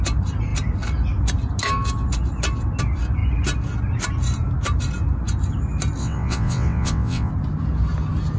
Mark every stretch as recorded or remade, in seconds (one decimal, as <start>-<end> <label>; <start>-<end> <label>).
0.0-6.0 recorded; 6.0-7.3 remade; 7.3-8.4 recorded